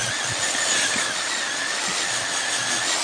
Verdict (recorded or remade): recorded